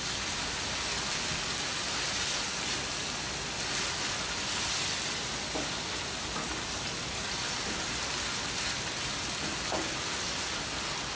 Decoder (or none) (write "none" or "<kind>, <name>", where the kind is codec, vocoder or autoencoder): none